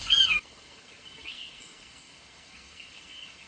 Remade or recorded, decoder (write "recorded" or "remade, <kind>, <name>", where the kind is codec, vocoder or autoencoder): remade, codec, SNAC